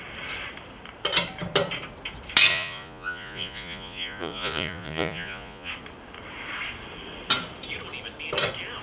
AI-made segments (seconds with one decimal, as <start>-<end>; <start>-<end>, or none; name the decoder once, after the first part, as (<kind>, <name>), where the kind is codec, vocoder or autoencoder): 2.5-5.7 (vocoder, Vocos)

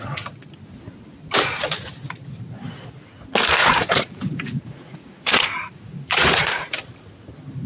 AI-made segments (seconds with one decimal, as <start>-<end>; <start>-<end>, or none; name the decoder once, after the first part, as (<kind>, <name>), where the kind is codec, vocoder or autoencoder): 3.6-6.7 (vocoder, Vocos)

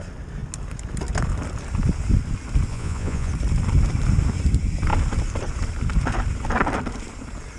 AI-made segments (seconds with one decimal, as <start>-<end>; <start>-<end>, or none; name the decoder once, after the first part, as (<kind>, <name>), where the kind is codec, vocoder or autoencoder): 2.7-3.3 (vocoder, Vocos)